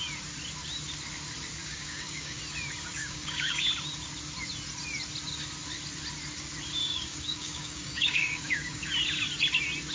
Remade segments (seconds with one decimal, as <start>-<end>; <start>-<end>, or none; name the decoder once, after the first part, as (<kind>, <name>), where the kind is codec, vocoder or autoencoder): 1.6-2.4 (codec, DAC); 3.0-3.7; 6.8-8.8